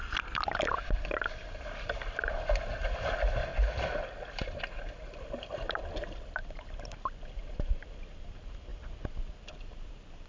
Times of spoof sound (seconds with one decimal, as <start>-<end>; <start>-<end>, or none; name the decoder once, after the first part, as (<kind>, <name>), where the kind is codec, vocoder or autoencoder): 0.0-3.5 (vocoder, BigVGAN v2); 4.6-8.7; 9.3-10.3